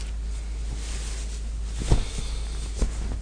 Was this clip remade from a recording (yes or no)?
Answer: no